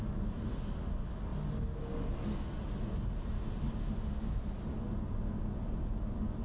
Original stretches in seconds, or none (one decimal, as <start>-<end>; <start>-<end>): 0.0-6.4